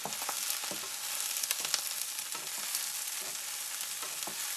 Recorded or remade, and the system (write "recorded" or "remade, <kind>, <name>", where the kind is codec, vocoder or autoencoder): recorded